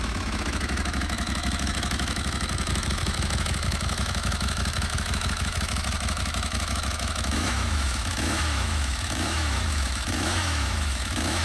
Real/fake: fake